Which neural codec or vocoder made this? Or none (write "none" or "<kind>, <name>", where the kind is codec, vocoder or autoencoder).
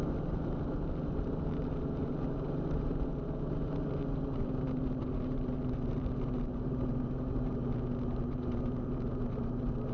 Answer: vocoder, BigVGAN v2